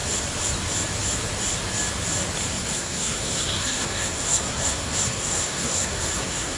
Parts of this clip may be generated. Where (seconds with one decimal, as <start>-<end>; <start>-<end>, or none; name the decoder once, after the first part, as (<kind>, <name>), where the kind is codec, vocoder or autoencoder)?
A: 2.5-6.6 (codec, SNAC)